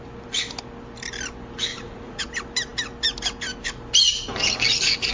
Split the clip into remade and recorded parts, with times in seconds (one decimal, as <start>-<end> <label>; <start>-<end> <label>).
0.0-1.7 recorded; 1.7-2.2 remade; 2.2-5.1 recorded